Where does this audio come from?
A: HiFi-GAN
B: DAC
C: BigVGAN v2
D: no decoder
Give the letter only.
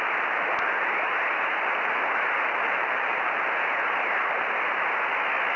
D